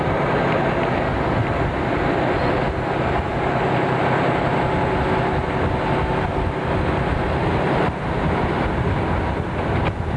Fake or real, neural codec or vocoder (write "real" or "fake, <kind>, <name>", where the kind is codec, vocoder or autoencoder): real